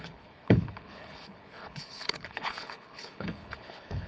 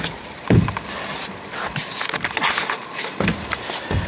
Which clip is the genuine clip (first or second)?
second